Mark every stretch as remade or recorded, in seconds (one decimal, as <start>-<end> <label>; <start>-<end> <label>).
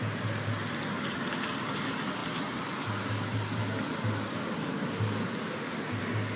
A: 0.0-6.4 recorded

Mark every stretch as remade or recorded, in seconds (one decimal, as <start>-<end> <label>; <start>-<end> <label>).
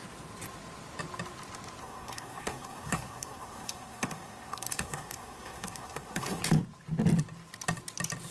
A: 0.0-1.8 recorded; 1.8-6.4 remade; 6.4-8.3 recorded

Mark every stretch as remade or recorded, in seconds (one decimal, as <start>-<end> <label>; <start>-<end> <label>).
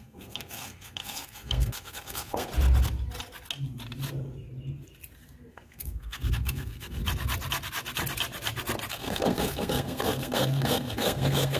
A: 0.0-2.5 remade; 2.5-5.5 recorded; 5.5-7.0 remade; 7.0-8.9 recorded; 8.9-11.6 remade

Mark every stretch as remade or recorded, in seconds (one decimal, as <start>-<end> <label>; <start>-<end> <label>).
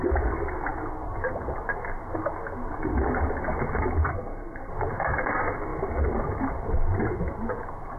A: 0.0-4.1 recorded; 4.1-4.7 remade; 4.7-8.0 recorded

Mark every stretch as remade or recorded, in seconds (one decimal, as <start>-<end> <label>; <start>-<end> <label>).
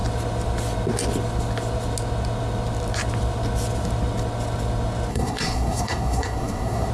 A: 0.0-5.1 recorded; 5.1-6.9 remade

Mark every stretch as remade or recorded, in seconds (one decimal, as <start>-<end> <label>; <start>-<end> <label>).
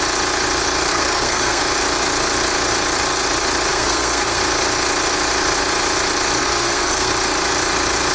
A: 0.0-0.9 recorded; 0.9-1.6 remade; 1.6-3.7 recorded; 3.7-4.4 remade; 4.4-6.4 recorded; 6.4-7.1 remade; 7.1-8.1 recorded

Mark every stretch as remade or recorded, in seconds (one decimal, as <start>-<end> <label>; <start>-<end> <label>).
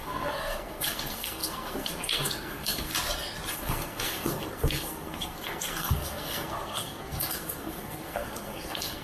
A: 0.0-2.9 remade; 2.9-3.5 recorded; 3.5-9.0 remade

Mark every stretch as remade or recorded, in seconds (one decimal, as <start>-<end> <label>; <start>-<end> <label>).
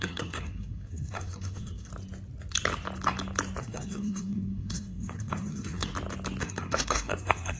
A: 0.0-1.9 remade; 1.9-3.6 recorded; 3.6-5.9 remade; 5.9-6.4 recorded; 6.4-7.6 remade